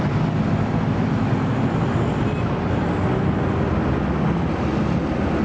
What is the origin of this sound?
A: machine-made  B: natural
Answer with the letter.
B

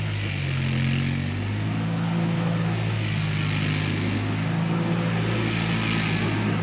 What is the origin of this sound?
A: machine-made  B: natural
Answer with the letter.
B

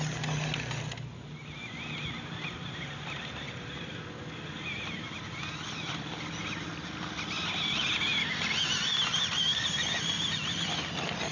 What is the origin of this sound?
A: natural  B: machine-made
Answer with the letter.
A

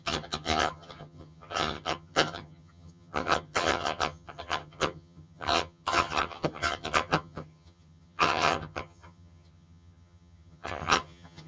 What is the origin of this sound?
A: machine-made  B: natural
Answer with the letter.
A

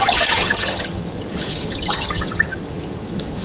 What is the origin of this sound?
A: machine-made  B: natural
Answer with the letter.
A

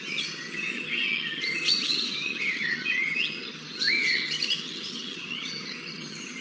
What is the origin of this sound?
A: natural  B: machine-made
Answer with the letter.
B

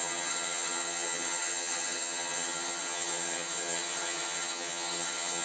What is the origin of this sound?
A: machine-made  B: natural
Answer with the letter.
A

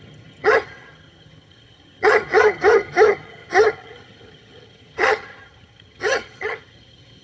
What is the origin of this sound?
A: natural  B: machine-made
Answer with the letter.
B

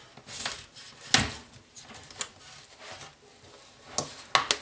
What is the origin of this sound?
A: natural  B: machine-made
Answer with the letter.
A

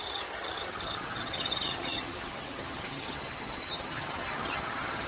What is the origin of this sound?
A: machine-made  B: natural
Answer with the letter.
A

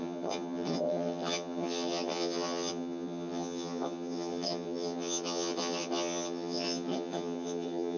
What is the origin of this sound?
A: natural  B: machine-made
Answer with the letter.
B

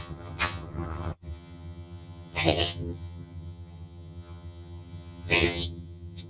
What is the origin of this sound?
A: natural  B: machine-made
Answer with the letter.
B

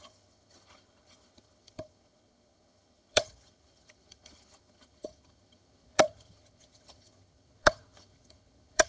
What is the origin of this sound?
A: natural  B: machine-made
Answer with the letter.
B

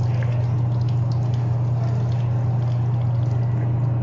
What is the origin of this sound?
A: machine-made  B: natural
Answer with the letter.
B